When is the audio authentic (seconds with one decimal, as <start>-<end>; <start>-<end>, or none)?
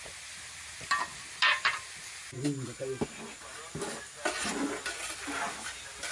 0.0-6.1